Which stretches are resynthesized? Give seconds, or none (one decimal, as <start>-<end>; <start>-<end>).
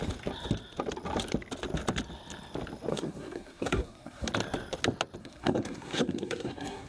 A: 2.9-4.3; 5.2-6.9